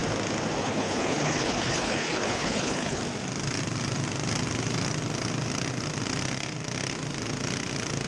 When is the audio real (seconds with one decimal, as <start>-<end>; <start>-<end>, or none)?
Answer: 0.0-0.6; 3.0-8.1